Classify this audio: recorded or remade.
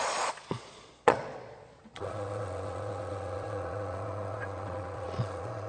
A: remade